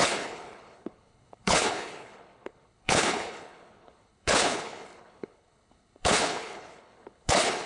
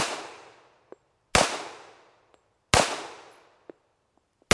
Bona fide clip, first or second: second